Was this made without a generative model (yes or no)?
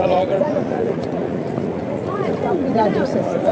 no